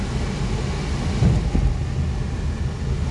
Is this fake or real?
real